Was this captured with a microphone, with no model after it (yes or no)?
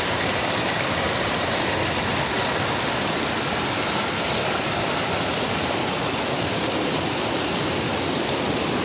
yes